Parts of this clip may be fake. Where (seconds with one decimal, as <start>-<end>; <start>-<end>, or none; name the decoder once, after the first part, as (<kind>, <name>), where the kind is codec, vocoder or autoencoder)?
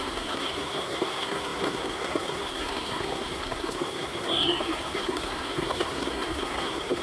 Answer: 0.0-7.0 (codec, SNAC)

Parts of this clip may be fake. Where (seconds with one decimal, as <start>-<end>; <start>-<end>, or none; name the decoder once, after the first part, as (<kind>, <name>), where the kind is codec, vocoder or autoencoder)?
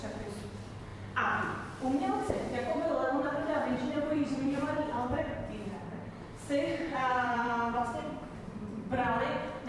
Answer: 0.0-0.9 (vocoder, BigVGAN v2); 2.3-9.7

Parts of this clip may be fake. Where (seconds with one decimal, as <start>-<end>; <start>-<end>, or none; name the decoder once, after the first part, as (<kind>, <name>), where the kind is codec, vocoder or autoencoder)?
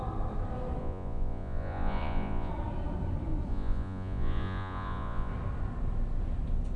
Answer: 0.8-2.5 (vocoder, Vocos); 3.5-5.3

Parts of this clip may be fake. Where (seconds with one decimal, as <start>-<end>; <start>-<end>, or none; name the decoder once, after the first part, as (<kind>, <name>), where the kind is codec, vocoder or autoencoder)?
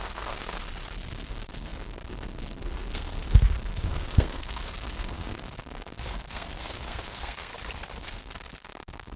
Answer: 0.0-0.6 (codec, SNAC); 1.1-7.5; 8.0-9.2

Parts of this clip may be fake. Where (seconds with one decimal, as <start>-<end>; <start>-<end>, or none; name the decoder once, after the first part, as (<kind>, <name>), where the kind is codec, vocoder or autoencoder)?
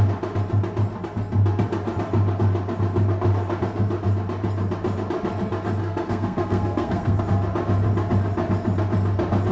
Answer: 5.8-7.2 (codec, SNAC)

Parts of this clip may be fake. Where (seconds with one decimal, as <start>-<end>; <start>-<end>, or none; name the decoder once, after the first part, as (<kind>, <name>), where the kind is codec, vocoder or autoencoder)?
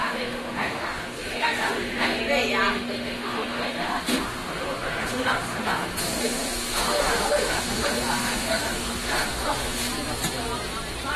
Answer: 0.0-2.2 (autoencoder, DAC-VAE); 2.7-9.9